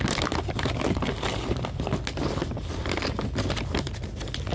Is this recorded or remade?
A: recorded